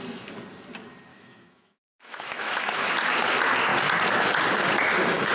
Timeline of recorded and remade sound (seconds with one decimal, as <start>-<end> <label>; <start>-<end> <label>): 0.0-1.1 recorded; 1.1-2.9 remade; 2.9-5.3 recorded